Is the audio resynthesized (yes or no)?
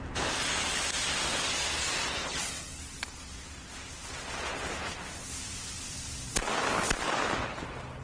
no